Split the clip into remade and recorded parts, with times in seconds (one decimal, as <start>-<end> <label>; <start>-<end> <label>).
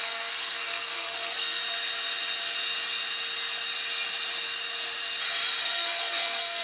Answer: 0.0-1.6 remade; 1.6-5.6 recorded; 5.6-6.6 remade